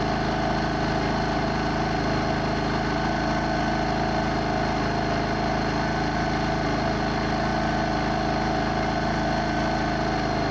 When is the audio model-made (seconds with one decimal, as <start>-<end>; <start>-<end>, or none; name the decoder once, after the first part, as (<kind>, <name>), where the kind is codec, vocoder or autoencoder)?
none